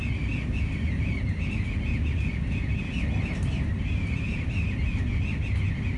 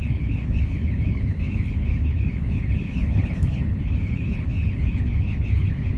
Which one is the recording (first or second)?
first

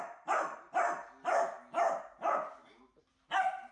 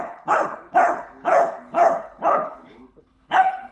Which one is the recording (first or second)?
first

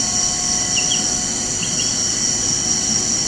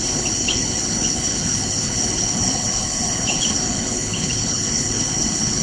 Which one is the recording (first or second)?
first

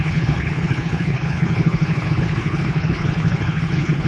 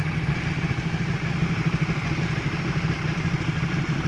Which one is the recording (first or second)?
second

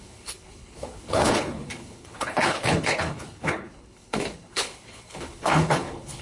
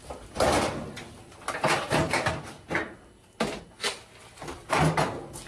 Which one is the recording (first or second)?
second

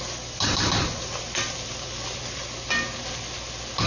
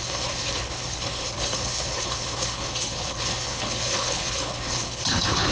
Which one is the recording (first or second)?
first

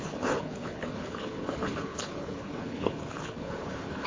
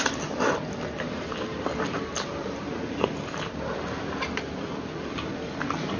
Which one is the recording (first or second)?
second